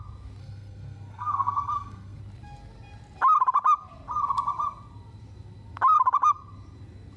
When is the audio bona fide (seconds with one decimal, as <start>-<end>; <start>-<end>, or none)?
0.0-0.4; 2.2-7.2